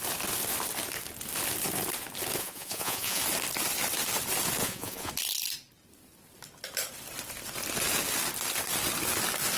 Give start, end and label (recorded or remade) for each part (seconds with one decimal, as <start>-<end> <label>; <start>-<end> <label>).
0.0-2.4 recorded; 2.4-3.2 remade; 3.2-4.6 recorded; 4.6-5.1 remade; 5.1-9.6 recorded